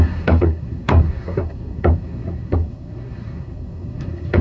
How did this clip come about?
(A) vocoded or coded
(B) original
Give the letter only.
A